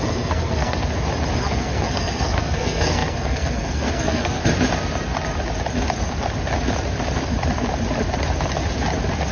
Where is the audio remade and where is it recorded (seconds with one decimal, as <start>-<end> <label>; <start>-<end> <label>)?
0.0-0.8 remade; 0.8-1.4 recorded; 1.4-4.4 remade; 4.4-9.3 recorded